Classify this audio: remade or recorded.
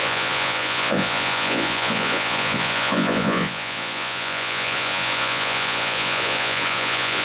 remade